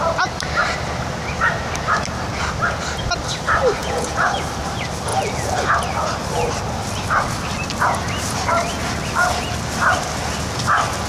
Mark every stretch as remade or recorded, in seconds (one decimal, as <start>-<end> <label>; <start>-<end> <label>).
0.0-3.8 recorded; 3.8-4.3 remade; 4.3-11.1 recorded